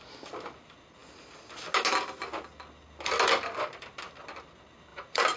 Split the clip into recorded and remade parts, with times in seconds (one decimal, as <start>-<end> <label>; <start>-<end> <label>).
0.0-4.9 recorded; 4.9-5.4 remade